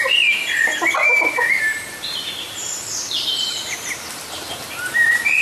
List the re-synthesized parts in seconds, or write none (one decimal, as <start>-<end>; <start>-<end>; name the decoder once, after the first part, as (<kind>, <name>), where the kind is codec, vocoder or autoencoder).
0.0-0.7 (vocoder, BigVGAN v2); 1.3-5.4